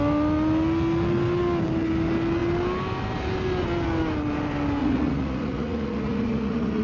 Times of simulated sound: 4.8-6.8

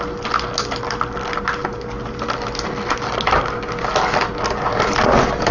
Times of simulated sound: none

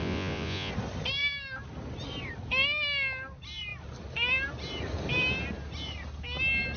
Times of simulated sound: 0.0-0.7

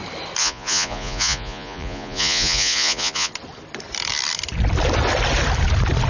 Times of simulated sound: 0.4-3.3

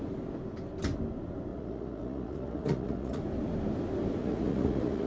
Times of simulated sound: 1.5-3.2; 4.2-5.1

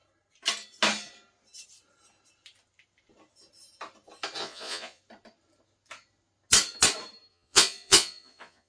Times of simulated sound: 4.4-5.0; 7.3-8.7

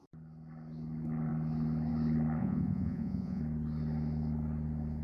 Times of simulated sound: 2.4-3.4